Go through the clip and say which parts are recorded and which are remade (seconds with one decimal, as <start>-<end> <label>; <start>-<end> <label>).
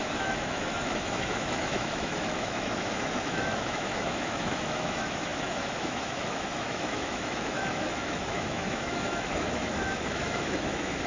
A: 0.0-11.1 remade